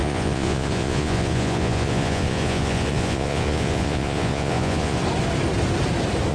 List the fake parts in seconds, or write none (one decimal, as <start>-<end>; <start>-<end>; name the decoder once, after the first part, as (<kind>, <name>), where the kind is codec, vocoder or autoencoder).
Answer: 0.0-5.0 (vocoder, Vocos)